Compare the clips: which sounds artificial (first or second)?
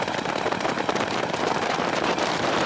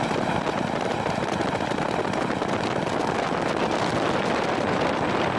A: first